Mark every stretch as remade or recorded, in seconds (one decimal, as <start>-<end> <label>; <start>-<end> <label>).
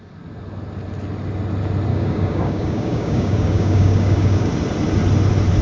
0.0-1.9 recorded; 1.9-4.5 remade; 4.5-5.6 recorded